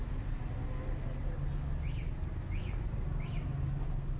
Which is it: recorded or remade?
recorded